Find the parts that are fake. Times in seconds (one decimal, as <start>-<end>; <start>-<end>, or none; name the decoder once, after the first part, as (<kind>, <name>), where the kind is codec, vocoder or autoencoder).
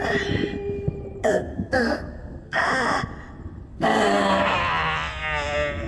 1.2-2.6 (codec, SNAC); 3.7-4.6